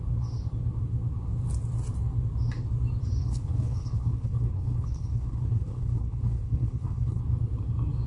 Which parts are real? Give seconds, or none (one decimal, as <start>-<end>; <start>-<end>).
0.0-3.2; 7.2-8.1